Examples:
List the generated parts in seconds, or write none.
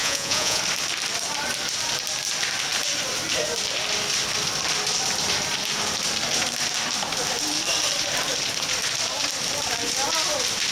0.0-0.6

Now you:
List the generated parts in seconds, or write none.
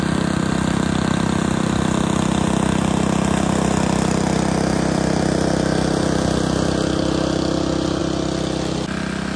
none